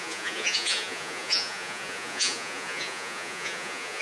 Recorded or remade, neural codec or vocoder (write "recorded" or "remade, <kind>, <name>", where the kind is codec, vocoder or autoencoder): remade, vocoder, Vocos